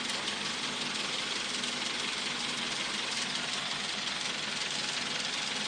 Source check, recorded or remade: recorded